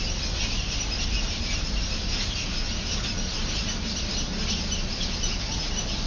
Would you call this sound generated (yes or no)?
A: no